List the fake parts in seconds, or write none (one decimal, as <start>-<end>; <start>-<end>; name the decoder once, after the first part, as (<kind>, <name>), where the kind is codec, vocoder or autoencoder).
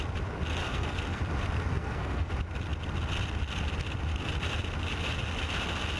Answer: 0.6-1.2 (codec, SNAC); 1.7-2.3